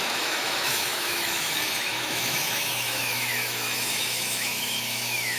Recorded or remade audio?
remade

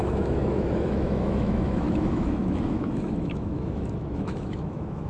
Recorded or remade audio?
remade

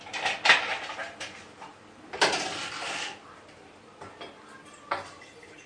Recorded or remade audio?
recorded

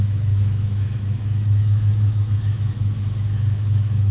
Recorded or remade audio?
remade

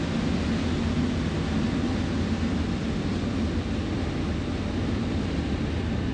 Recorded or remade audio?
recorded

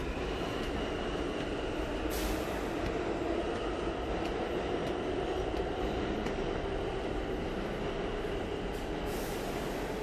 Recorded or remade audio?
recorded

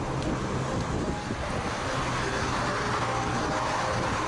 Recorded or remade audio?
recorded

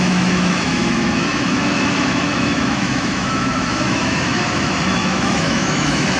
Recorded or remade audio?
remade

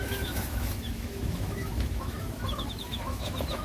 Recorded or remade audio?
remade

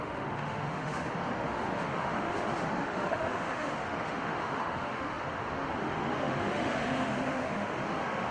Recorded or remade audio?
remade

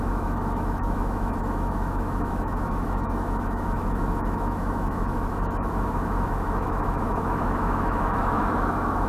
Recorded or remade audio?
remade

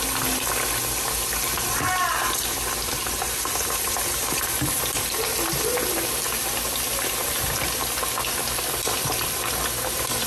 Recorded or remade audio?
recorded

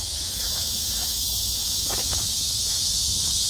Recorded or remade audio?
remade